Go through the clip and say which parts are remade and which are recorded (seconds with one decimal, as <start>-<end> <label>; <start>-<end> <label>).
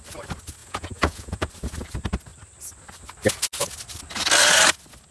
0.0-0.6 recorded; 0.6-1.5 remade; 1.5-5.1 recorded